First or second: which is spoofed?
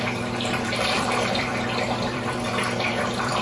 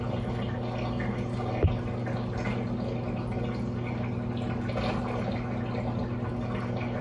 first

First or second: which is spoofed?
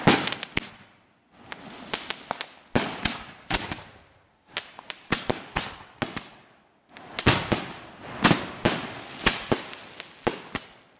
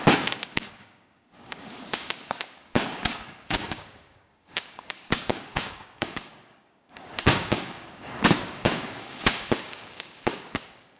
second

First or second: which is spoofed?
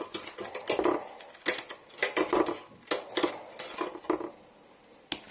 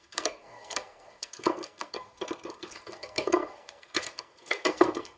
second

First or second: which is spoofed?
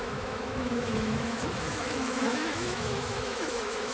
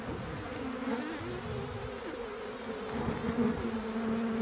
first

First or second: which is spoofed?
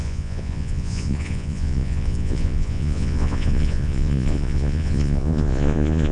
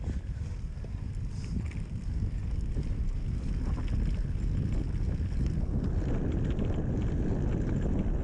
first